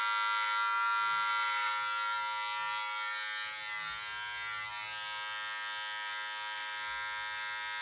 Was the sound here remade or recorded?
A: recorded